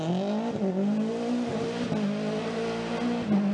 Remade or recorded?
recorded